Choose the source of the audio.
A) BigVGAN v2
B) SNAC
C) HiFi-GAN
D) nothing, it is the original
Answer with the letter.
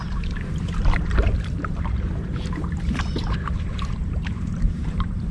A